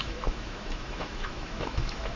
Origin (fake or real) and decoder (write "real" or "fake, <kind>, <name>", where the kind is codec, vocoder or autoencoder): fake, autoencoder, DAC-VAE